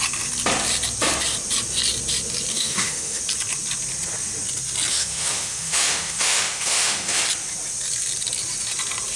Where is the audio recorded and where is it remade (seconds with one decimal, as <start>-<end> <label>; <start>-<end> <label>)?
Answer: 0.0-2.5 recorded; 2.5-3.2 remade; 3.2-4.9 recorded; 4.9-7.2 remade; 7.2-9.2 recorded